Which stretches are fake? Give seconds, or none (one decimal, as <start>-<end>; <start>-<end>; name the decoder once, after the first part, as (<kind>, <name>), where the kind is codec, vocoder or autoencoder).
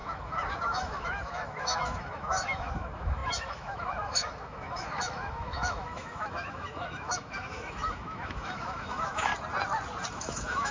0.0-9.3 (autoencoder, DAC-VAE); 10.1-10.7